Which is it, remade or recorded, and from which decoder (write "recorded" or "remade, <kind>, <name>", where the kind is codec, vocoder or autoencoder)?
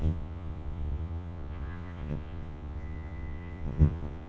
remade, vocoder, Vocos